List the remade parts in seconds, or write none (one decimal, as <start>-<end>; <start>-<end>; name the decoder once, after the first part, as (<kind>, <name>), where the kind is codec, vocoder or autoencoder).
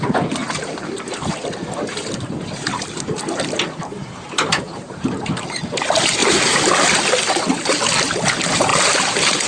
none